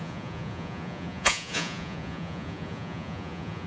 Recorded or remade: remade